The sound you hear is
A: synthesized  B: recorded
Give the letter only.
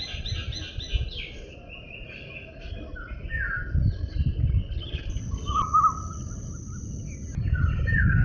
B